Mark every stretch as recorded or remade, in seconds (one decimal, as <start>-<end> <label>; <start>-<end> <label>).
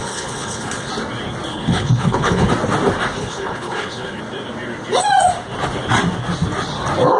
0.0-0.9 remade; 0.9-1.5 recorded; 1.5-2.5 remade; 2.5-3.2 recorded; 3.2-4.2 remade; 4.2-7.2 recorded